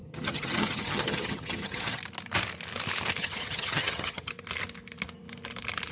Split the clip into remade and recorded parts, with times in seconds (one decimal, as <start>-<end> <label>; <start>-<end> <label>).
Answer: 0.0-2.0 remade; 2.0-3.2 recorded; 3.2-4.3 remade; 4.3-5.9 recorded